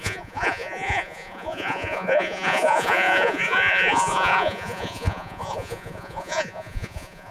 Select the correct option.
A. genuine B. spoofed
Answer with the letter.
B